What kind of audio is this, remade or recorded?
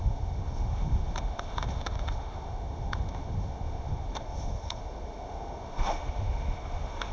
remade